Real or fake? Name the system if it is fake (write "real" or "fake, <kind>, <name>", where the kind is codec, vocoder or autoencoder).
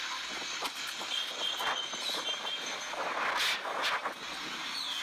real